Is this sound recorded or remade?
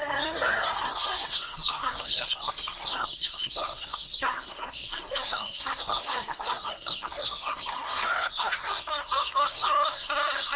remade